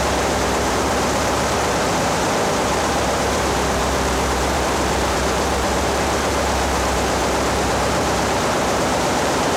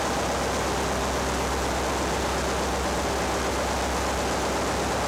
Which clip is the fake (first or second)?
first